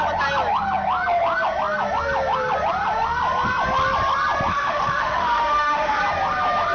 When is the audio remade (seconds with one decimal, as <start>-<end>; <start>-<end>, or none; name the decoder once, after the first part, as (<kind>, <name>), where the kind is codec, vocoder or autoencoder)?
4.5-6.0 (autoencoder, DAC-VAE)